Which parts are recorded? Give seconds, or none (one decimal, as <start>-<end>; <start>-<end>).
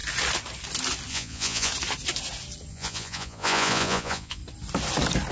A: 0.0-1.1; 1.7-2.7; 4.4-5.3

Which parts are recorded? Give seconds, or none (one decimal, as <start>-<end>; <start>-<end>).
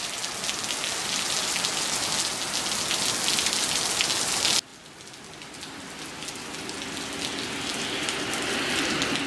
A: 0.0-9.3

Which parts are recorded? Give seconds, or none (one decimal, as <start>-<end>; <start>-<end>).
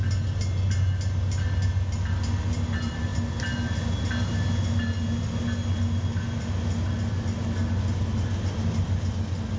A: 0.0-9.6